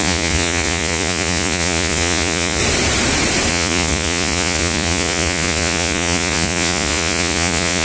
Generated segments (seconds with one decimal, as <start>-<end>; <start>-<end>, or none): 0.0-2.6; 3.5-7.8

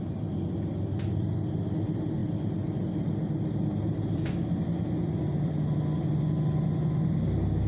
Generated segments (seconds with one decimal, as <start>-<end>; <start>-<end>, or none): none

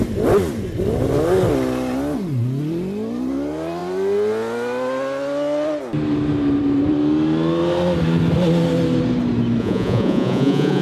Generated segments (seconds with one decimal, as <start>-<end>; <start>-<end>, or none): 9.6-10.8

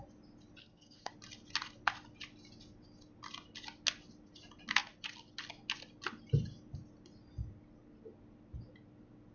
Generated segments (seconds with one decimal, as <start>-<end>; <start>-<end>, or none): 0.6-1.1

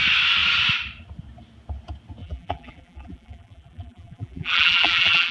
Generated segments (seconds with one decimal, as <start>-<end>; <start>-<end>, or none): 2.2-5.3